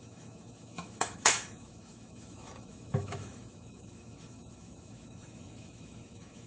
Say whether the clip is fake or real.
fake